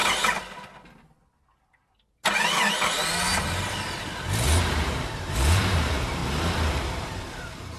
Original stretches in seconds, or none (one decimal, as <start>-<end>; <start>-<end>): 0.0-4.6; 6.2-7.3